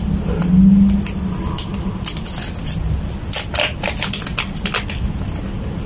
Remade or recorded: recorded